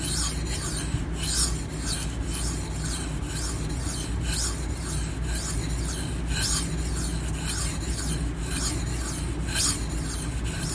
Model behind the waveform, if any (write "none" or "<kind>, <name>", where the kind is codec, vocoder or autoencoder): none